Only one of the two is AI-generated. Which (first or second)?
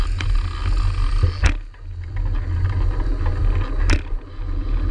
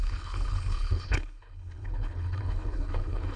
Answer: second